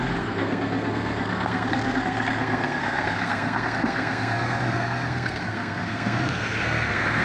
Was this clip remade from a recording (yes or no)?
yes